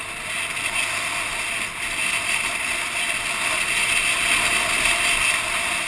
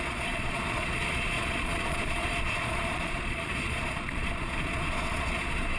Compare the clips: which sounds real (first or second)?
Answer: first